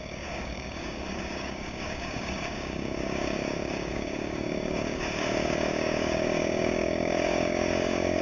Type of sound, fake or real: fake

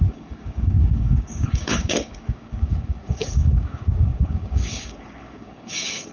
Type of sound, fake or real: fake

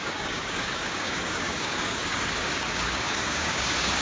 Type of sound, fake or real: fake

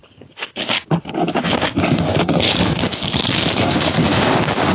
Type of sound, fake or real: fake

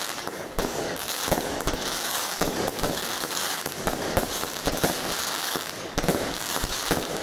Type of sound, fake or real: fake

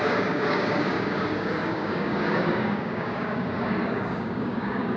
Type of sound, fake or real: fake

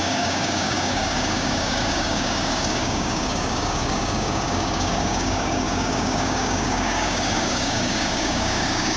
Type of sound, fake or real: fake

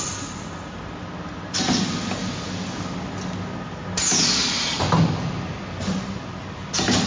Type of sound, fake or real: real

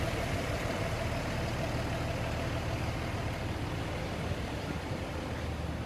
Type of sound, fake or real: real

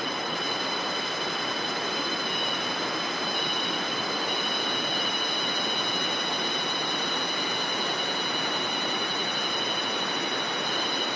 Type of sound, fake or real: real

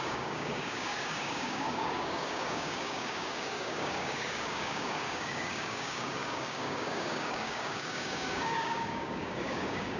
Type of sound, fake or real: fake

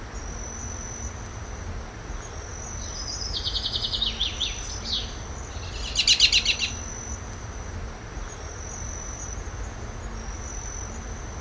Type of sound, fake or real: real